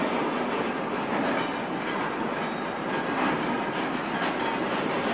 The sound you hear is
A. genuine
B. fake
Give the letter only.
A